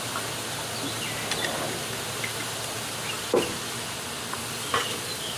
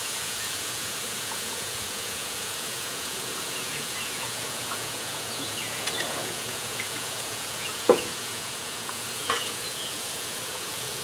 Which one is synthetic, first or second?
second